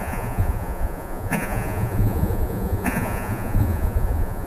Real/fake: fake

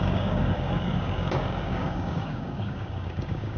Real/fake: fake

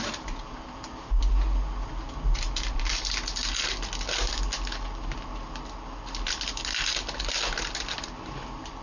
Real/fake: real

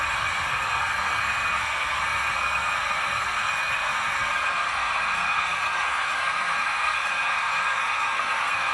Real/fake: fake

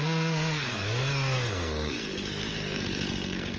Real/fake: fake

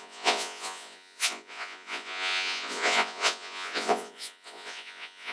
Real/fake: fake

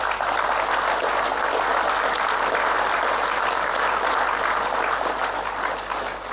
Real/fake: real